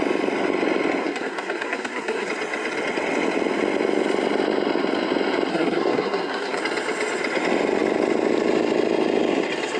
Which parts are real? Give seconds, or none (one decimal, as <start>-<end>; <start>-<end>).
0.0-1.0; 2.3-5.5; 6.6-9.8